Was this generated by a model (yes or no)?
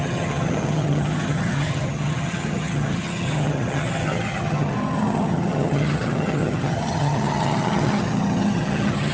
yes